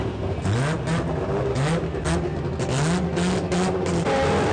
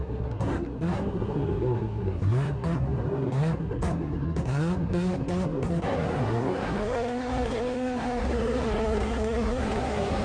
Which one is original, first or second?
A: first